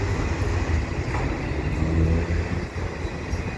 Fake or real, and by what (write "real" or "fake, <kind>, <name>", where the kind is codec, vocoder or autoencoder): real